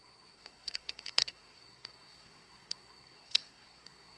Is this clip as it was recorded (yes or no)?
no